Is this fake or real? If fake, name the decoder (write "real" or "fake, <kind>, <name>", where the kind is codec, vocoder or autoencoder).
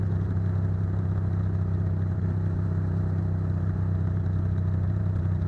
fake, vocoder, BigVGAN v2